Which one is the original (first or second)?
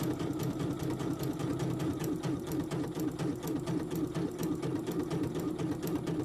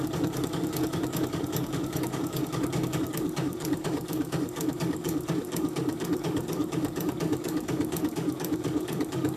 first